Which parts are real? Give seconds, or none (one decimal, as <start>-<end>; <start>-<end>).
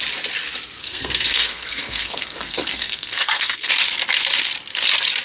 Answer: 0.0-0.8; 3.7-5.2